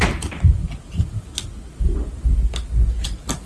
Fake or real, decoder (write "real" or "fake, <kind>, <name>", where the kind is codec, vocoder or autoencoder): real